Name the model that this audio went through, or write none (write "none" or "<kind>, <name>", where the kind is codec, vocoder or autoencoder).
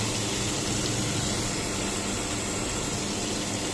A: none